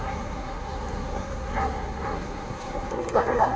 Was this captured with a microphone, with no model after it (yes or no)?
no